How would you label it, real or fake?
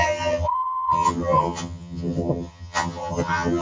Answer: fake